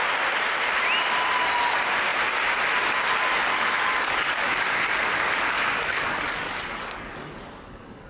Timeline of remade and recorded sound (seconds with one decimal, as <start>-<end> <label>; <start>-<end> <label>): 0.0-3.5 recorded; 3.5-8.1 remade